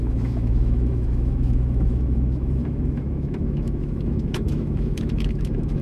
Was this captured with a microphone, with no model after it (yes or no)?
no